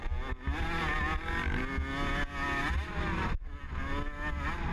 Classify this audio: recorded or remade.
recorded